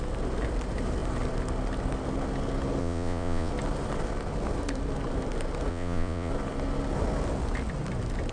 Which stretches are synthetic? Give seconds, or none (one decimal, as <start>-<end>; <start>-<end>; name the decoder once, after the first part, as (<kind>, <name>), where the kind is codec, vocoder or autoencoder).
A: 2.8-3.5 (vocoder, Vocos); 5.7-6.3